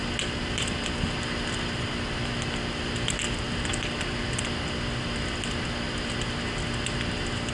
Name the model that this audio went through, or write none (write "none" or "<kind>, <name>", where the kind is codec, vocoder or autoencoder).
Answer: none